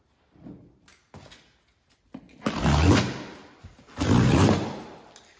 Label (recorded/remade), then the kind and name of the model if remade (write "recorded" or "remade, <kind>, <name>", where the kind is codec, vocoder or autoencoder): recorded